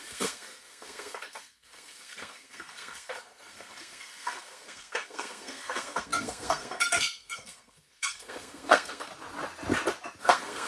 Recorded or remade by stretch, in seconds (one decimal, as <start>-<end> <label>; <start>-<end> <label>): 0.0-9.1 remade; 9.1-10.2 recorded; 10.2-10.7 remade